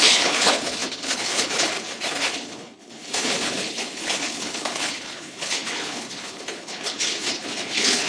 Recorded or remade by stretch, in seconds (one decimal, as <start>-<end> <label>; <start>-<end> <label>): 0.0-8.1 remade